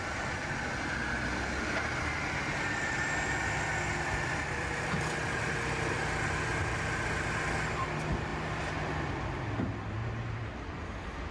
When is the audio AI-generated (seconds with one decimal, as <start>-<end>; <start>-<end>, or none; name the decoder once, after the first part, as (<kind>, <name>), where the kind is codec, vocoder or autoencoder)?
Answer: 4.4-6.0 (vocoder, BigVGAN v2); 8.3-9.1; 10.0-10.5